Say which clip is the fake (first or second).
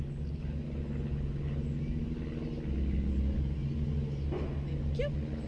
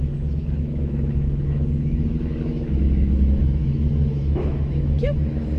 second